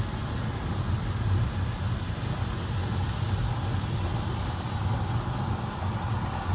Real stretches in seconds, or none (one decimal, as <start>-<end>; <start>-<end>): 0.0-6.5